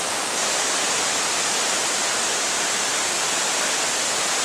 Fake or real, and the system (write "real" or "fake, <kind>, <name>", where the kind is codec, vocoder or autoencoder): fake, vocoder, BigVGAN v2